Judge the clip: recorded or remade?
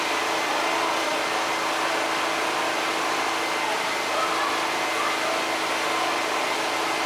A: recorded